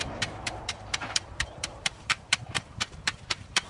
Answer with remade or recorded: remade